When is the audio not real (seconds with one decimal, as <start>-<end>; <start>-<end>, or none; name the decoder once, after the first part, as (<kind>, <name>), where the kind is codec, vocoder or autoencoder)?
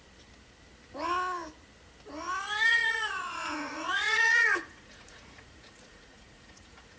2.7-7.0 (vocoder, Vocos)